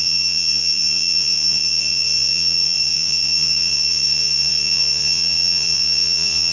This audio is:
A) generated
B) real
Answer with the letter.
A